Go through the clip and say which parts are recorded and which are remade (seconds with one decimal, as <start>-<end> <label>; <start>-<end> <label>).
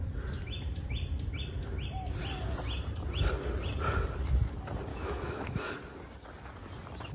0.0-4.9 recorded; 4.9-5.7 remade; 5.7-7.1 recorded